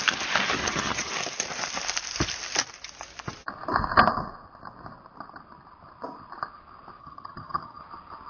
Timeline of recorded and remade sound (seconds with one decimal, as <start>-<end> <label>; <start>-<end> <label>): 0.0-0.6 recorded; 0.6-1.1 remade; 1.1-7.0 recorded; 7.0-7.8 remade; 7.8-8.3 recorded